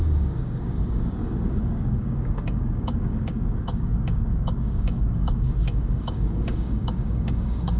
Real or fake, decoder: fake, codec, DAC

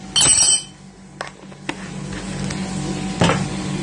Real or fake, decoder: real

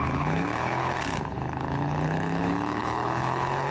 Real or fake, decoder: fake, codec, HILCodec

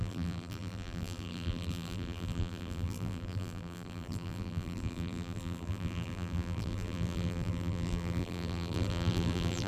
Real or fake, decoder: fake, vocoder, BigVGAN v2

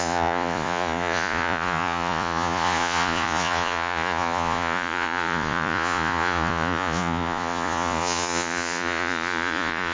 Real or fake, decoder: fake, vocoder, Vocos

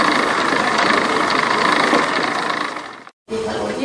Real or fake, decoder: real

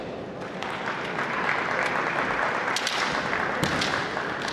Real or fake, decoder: real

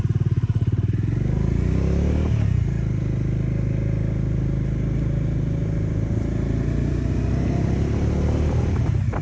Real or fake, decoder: real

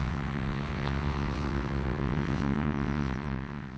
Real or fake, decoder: fake, vocoder, WaveNeXt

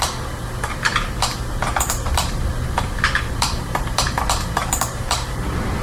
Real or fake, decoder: fake, vocoder, BigVGAN v2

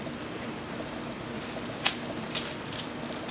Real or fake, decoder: real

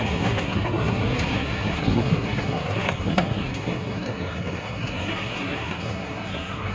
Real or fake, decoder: fake, codec, SNAC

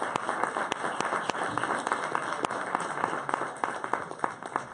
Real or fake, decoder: real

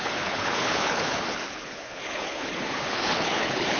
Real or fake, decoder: fake, codec, HILCodec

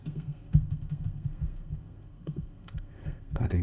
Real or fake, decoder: fake, codec, SNAC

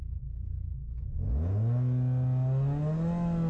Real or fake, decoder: real